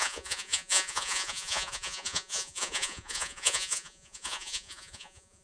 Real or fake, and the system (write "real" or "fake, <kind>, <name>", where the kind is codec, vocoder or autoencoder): fake, vocoder, Vocos